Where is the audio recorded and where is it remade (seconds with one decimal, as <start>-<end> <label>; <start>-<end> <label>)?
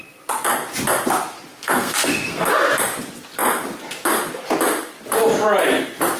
0.0-1.5 recorded; 1.5-2.5 remade; 2.5-6.2 recorded